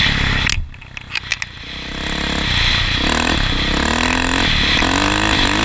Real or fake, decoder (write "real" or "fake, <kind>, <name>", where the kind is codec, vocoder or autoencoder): real